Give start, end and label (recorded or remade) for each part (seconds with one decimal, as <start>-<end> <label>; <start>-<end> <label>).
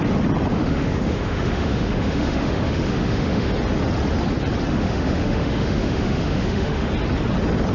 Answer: 0.0-0.5 recorded; 0.5-3.5 remade; 3.5-4.7 recorded; 4.7-6.9 remade; 6.9-7.7 recorded